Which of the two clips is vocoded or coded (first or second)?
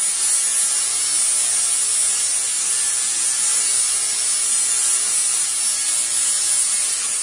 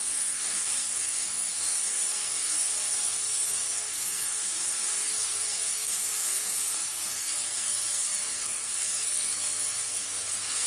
second